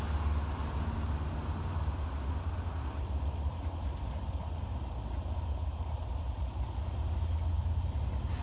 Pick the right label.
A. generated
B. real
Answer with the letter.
B